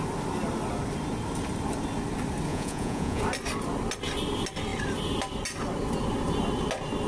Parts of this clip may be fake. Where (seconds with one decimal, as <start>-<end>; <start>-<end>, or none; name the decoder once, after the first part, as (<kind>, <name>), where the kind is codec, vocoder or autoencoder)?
2.5-3.2 (vocoder, Vocos)